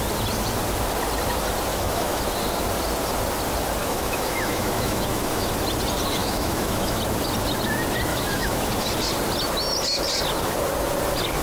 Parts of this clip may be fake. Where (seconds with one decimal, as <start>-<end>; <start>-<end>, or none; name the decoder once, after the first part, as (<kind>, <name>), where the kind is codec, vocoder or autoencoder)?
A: 1.7-2.2 (autoencoder, DAC-VAE); 3.8-5.5; 6.2-7.0; 8.1-8.7